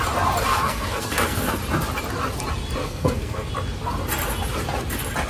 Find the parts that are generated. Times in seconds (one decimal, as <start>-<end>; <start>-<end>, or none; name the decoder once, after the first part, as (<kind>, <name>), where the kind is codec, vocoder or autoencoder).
0.5-1.6 (codec, SNAC); 2.8-3.5